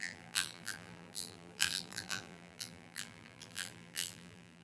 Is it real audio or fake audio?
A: fake